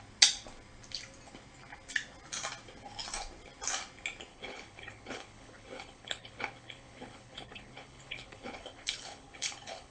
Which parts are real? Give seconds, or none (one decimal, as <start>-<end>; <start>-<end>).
0.0-4.3